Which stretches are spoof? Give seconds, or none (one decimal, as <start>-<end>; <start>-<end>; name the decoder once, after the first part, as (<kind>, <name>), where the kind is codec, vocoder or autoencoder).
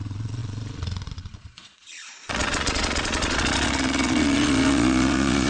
0.0-5.5 (vocoder, Vocos)